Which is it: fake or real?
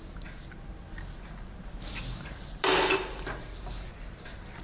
real